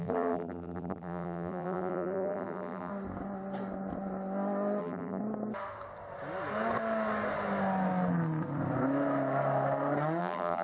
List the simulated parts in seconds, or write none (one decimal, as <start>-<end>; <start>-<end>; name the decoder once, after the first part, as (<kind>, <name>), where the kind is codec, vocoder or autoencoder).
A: 0.0-2.9 (vocoder, BigVGAN v2); 4.8-5.2; 10.2-10.6